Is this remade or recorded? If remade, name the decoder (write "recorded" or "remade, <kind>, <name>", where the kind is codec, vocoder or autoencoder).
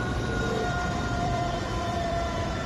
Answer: remade, vocoder, BigVGAN v2